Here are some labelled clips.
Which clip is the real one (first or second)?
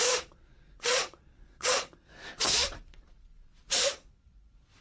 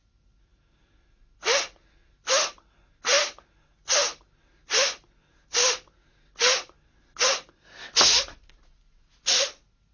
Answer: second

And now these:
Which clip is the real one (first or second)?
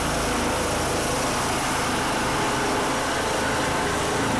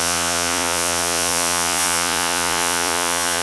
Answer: first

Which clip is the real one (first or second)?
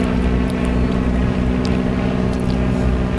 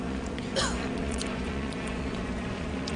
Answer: first